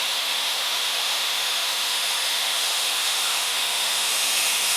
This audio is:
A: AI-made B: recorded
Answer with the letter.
A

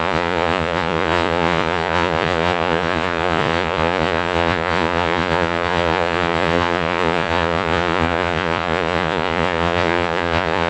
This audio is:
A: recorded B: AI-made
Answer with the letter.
B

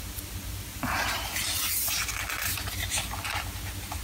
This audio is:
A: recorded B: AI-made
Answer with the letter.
A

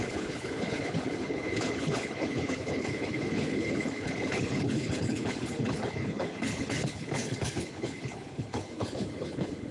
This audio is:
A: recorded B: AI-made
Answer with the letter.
B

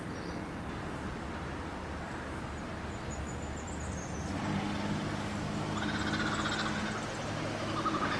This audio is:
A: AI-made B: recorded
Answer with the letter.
B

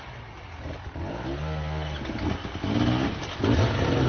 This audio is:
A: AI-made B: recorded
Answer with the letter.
B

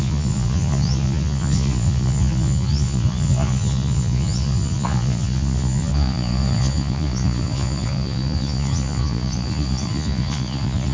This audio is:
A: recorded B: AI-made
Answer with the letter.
B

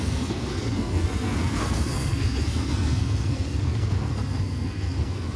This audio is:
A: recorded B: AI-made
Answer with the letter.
B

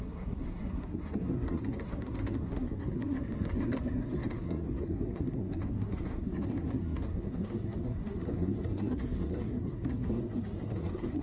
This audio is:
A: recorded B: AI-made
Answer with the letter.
B